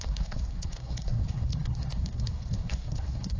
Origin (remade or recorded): remade